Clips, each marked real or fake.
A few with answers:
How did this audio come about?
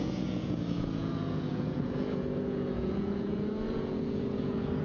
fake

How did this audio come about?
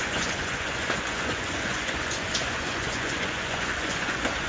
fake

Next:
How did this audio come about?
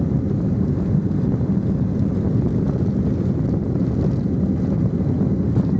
real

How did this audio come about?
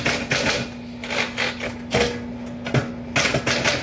real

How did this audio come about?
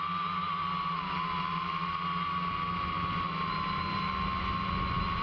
real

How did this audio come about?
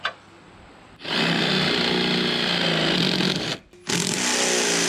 real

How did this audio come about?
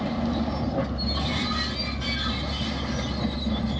real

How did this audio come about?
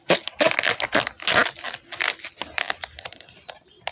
real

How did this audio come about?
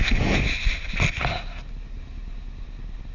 real